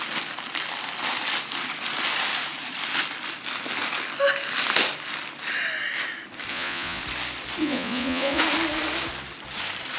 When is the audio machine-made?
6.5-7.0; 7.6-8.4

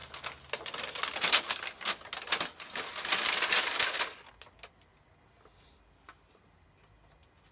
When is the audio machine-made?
none

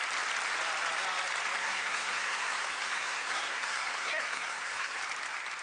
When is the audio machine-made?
1.6-5.0

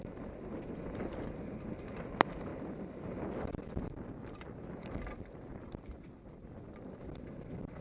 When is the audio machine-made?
none

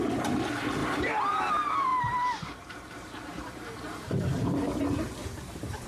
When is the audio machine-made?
0.8-1.5; 1.9-4.2; 5.2-5.9

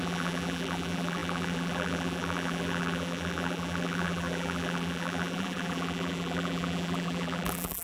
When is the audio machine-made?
0.0-7.8

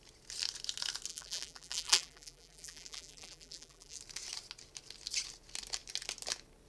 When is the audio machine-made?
1.1-4.0

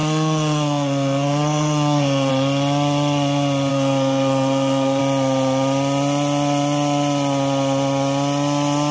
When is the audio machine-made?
0.0-2.3; 3.7-5.0